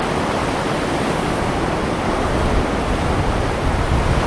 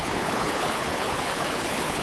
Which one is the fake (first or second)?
second